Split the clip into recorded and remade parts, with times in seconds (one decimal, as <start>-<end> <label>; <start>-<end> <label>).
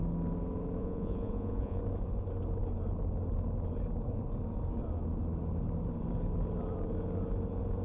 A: 0.0-0.8 recorded; 0.8-1.8 remade; 1.8-7.8 recorded